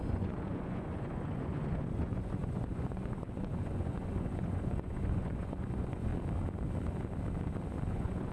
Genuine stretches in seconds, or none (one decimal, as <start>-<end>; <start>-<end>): 6.1-7.9